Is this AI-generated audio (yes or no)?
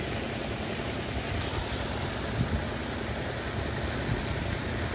no